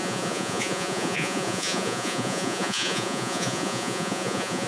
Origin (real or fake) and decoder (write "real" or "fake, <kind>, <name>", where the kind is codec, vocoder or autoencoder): fake, vocoder, Vocos